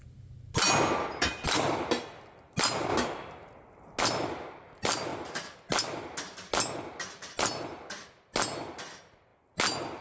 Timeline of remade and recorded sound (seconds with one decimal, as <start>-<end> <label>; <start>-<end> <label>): 0.0-10.0 recorded